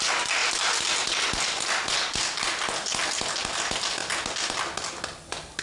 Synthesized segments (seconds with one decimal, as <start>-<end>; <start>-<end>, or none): none